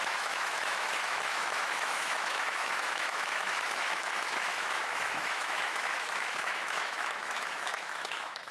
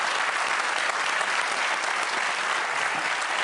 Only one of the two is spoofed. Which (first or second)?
first